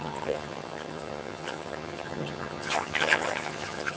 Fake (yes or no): yes